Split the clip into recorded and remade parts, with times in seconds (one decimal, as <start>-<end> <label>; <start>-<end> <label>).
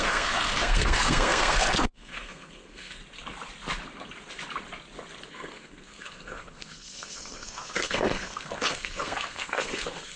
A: 0.0-3.0 remade; 3.0-5.3 recorded; 5.3-10.2 remade